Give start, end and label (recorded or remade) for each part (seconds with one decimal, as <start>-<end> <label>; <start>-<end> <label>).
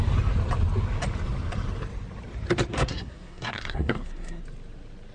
0.0-2.7 recorded; 2.7-4.4 remade; 4.4-5.1 recorded